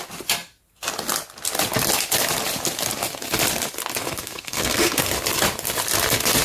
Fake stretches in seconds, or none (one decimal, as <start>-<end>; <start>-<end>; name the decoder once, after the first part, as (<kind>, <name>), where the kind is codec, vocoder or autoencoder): 4.0-5.1 (codec, SNAC)